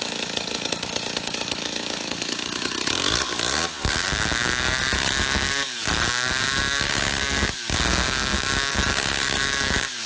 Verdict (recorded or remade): remade